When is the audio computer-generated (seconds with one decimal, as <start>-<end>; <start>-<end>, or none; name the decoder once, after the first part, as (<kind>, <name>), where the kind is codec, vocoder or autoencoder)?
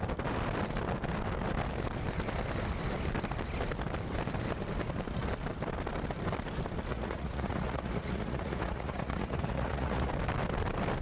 6.9-10.1 (vocoder, Vocos)